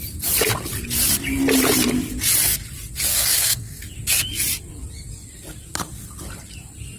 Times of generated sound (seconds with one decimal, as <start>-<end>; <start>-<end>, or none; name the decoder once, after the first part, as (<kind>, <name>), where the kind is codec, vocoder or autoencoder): 3.1-3.8 (codec, SNAC)